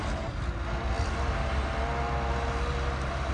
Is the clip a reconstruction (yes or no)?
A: no